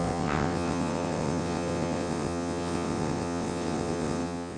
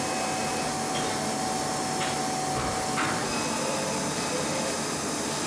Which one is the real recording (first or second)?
second